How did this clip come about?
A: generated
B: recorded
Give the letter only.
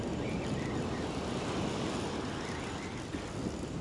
B